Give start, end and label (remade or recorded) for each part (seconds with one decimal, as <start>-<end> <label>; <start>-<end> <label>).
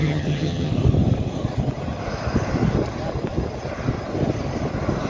0.0-0.7 remade; 0.7-5.1 recorded